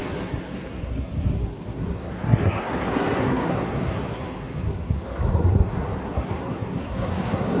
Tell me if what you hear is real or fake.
fake